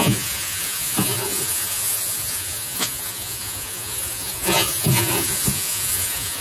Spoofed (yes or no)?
yes